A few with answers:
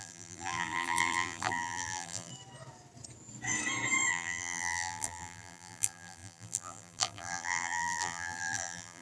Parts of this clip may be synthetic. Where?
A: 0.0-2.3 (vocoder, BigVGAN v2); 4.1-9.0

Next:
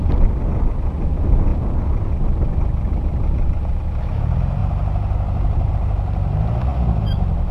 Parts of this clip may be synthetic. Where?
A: none